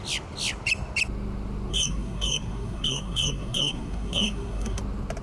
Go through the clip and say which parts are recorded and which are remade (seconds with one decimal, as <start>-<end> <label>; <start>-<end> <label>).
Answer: 0.0-1.7 recorded; 1.7-4.8 remade; 4.8-5.2 recorded